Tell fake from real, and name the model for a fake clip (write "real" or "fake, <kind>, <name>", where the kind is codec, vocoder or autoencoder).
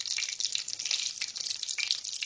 real